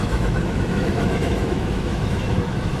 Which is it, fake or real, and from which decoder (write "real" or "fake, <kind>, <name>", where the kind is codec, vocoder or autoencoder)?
fake, autoencoder, DAC-VAE